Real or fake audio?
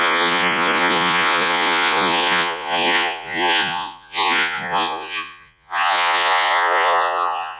fake